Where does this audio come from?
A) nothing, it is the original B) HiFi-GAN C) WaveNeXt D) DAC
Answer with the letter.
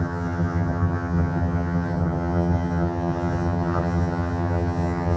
B